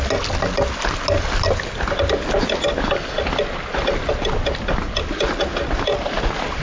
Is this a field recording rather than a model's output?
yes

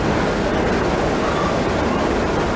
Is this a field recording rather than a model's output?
yes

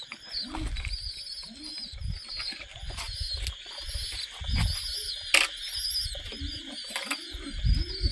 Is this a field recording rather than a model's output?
yes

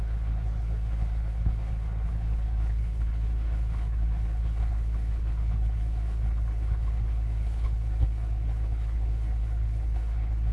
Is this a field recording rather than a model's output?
no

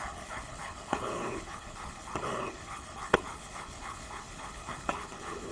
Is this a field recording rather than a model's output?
no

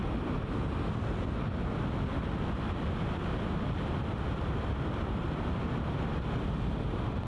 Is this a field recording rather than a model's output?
yes